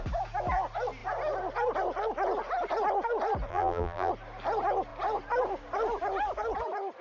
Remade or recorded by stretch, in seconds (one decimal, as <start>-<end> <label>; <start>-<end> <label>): 0.0-3.5 recorded; 3.5-4.1 remade; 4.1-7.0 recorded